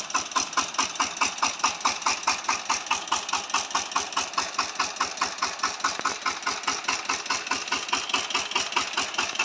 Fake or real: real